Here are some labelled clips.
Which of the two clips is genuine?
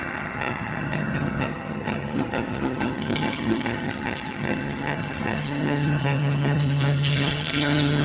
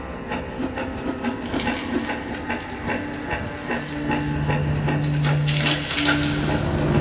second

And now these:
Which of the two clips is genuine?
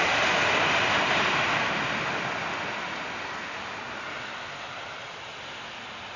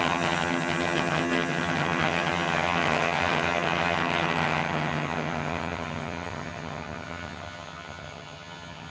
first